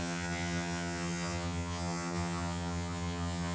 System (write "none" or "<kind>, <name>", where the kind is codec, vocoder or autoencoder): vocoder, HiFi-GAN